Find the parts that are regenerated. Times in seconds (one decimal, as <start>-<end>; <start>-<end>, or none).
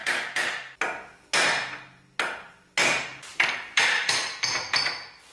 3.3-4.1